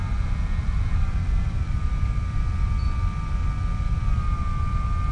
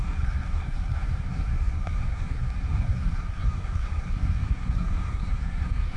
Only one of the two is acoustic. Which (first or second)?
first